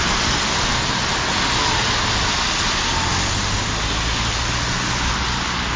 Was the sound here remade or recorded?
recorded